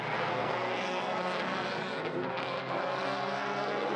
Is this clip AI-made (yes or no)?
yes